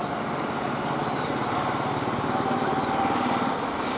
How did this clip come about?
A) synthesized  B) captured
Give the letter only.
B